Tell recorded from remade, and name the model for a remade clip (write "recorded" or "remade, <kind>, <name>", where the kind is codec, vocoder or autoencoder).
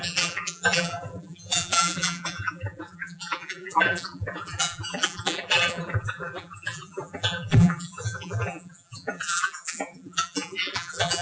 remade, vocoder, BigVGAN v2